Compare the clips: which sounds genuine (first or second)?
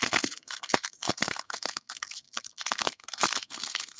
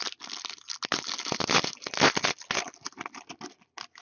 second